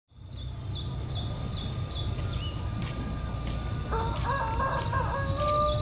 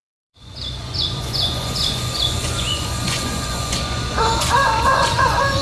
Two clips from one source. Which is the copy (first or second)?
second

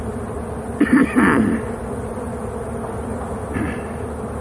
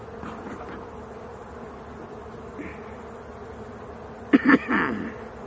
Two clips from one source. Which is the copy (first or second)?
first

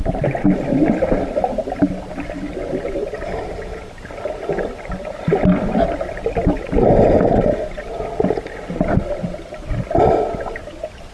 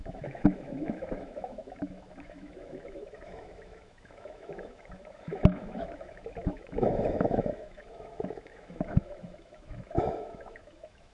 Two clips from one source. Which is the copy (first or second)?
second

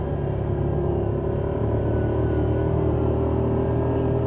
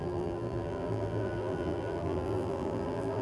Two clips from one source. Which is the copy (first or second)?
second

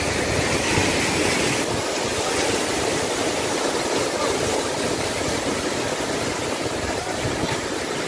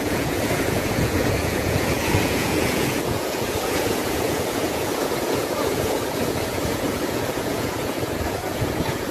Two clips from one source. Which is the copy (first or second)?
second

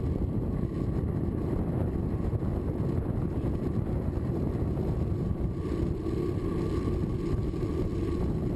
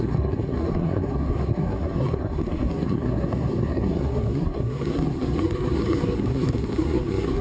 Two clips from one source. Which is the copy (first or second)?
second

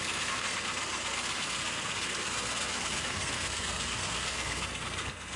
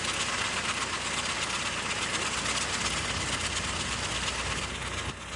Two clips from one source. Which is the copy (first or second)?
first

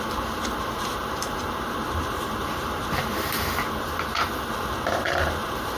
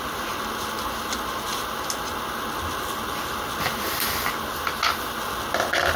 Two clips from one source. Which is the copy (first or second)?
first